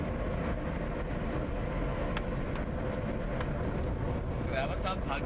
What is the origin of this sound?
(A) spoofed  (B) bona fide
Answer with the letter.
B